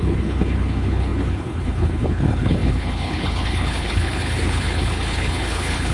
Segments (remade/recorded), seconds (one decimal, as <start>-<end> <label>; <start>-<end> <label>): 0.0-5.9 remade